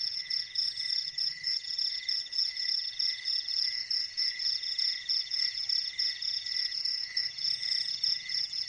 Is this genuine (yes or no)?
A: no